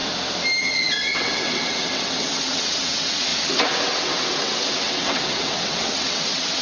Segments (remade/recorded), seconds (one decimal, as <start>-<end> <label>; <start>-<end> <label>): 0.0-0.6 recorded; 0.6-6.6 remade